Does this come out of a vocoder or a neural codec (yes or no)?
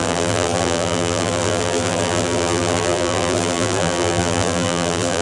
yes